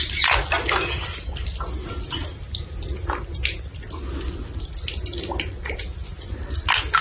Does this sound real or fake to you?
real